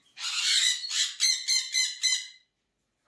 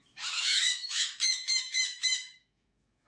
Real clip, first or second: first